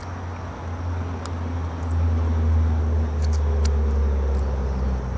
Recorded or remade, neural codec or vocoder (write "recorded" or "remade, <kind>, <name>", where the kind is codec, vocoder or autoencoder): recorded